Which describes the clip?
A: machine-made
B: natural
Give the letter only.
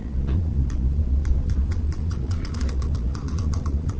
A